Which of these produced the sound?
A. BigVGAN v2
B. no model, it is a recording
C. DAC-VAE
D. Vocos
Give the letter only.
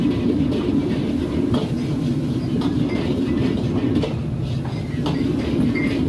B